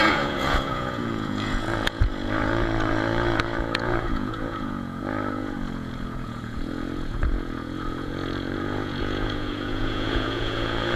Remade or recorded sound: remade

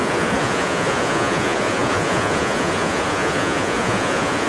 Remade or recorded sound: remade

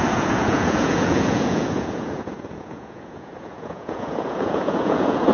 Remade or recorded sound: remade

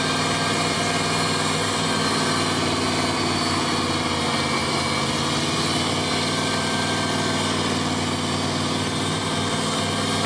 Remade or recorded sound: recorded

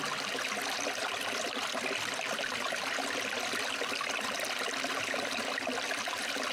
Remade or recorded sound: recorded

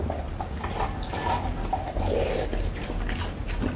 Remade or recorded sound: recorded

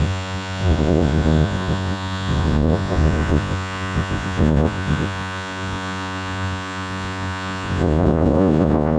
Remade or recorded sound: remade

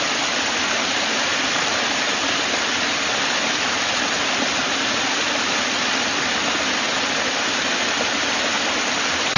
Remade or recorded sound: recorded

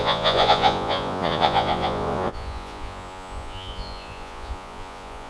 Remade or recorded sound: remade